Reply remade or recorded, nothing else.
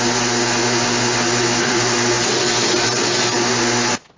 recorded